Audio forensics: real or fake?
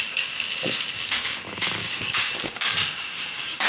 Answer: fake